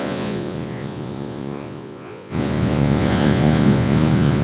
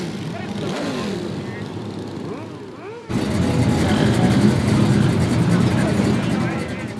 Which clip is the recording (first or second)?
second